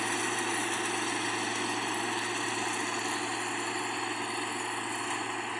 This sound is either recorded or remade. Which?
recorded